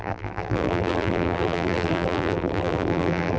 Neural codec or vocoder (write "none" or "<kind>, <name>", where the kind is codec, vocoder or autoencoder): vocoder, BigVGAN v2